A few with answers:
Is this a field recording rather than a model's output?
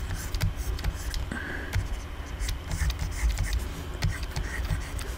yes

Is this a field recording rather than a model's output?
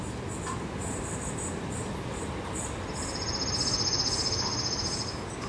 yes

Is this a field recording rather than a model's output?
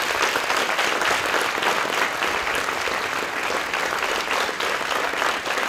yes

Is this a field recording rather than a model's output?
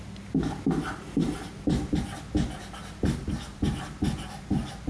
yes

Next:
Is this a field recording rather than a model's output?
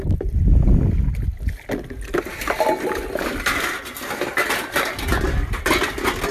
yes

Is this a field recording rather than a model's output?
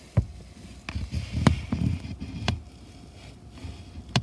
yes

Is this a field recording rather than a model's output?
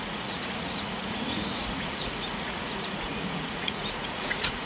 no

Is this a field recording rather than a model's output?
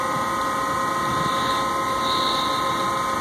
yes